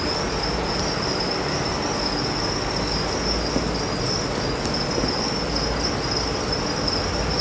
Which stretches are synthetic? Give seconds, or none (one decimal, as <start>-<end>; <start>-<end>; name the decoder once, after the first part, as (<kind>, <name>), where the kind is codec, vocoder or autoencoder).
none